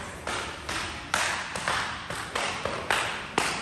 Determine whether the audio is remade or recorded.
recorded